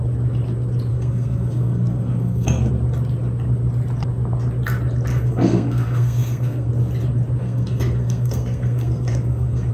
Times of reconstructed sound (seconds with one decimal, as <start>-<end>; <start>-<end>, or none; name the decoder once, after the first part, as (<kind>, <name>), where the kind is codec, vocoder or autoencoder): 0.9-2.7 (codec, SNAC); 5.1-6.7; 7.4-9.7

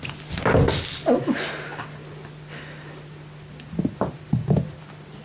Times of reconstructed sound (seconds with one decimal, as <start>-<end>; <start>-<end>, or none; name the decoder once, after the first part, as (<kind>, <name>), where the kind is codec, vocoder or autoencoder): 1.7-4.8 (vocoder, BigVGAN v2)

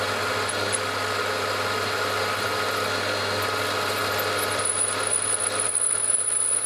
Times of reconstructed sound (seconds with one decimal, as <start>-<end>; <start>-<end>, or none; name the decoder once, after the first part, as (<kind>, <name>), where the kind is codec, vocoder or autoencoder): none

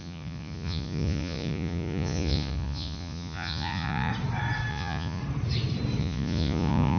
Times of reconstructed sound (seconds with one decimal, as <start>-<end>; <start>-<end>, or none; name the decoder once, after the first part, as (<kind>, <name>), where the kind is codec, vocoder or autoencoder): 0.0-4.1 (vocoder, Vocos); 4.7-5.2; 6.0-7.0

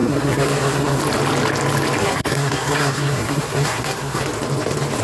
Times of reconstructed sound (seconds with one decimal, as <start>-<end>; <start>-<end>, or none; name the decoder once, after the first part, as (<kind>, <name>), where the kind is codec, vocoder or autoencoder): 0.0-1.0 (codec, SNAC); 2.0-4.2